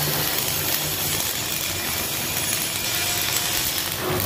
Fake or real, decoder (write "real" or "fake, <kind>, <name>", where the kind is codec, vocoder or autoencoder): real